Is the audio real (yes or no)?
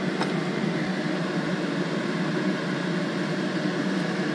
yes